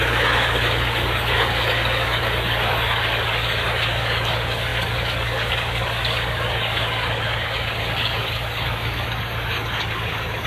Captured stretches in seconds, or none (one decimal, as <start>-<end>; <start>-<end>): none